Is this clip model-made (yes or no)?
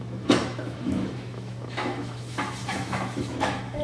yes